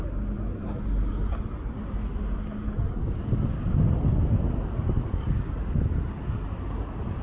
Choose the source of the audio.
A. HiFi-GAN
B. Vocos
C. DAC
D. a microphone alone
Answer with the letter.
D